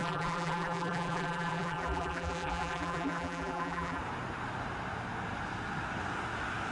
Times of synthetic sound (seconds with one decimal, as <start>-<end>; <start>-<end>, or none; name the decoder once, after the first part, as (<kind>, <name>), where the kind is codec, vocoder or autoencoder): 0.0-4.0 (vocoder, BigVGAN v2)